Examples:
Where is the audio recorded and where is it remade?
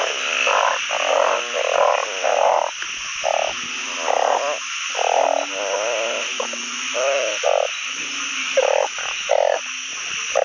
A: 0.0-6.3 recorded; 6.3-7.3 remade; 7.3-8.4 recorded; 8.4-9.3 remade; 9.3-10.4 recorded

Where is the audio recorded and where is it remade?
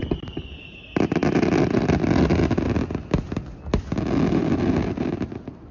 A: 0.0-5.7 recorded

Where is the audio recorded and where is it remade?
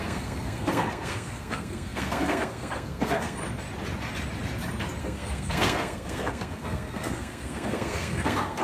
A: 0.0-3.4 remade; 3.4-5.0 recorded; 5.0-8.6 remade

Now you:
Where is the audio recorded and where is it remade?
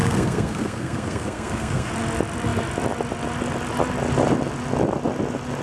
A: 0.0-1.9 remade; 1.9-5.6 recorded